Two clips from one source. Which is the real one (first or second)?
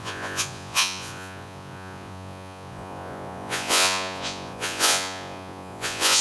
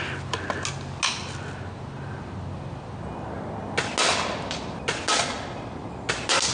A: second